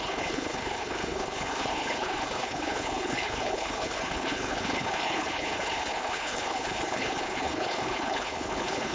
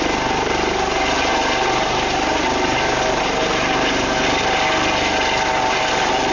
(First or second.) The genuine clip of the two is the second